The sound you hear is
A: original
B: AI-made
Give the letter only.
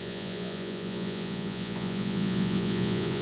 B